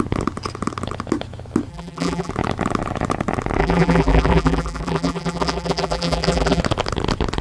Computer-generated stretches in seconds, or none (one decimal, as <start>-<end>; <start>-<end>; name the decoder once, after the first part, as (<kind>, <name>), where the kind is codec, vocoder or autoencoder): 1.7-2.3 (vocoder, BigVGAN v2); 3.6-6.6